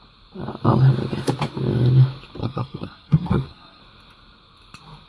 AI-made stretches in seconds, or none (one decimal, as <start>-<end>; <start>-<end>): 2.4-3.8